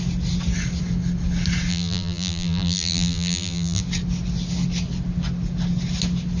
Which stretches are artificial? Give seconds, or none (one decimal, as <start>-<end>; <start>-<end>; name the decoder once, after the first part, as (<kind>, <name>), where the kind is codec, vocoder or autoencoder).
1.7-3.8 (vocoder, BigVGAN v2)